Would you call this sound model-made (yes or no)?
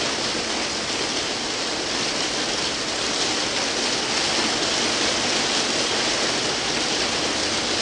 no